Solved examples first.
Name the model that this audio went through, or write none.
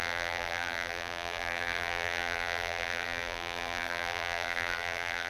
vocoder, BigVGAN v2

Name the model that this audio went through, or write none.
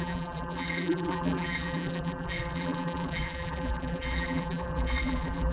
vocoder, BigVGAN v2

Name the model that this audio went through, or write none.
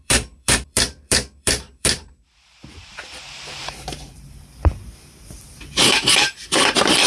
vocoder, BigVGAN v2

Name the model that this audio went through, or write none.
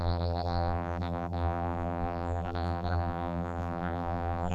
vocoder, BigVGAN v2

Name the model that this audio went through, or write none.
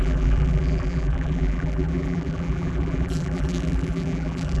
vocoder, BigVGAN v2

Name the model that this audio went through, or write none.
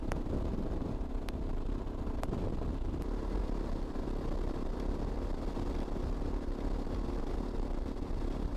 none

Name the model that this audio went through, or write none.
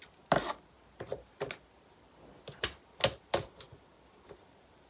none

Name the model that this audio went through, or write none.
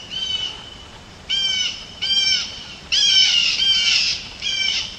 vocoder, BigVGAN v2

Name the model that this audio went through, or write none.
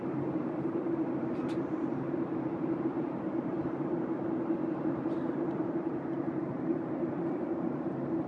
vocoder, BigVGAN v2